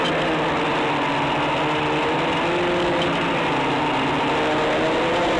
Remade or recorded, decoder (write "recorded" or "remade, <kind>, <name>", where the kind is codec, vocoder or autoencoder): recorded